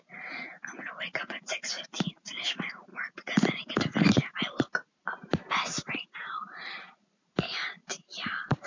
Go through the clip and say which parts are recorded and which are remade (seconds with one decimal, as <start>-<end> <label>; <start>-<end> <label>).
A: 0.0-8.7 recorded